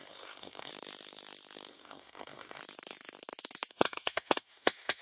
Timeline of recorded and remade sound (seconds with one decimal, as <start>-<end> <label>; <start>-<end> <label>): 0.0-0.7 remade; 0.7-1.7 recorded; 1.7-2.6 remade; 2.6-3.7 recorded; 3.7-5.0 remade